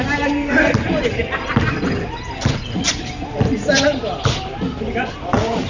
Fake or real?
real